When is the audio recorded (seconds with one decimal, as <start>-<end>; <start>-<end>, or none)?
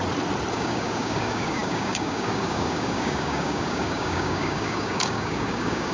0.0-0.5